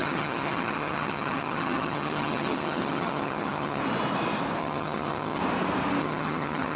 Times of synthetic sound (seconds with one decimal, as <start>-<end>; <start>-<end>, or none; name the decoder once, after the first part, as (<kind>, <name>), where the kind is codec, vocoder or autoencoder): 0.0-3.8 (vocoder, HiFi-GAN); 4.6-5.4; 6.0-6.8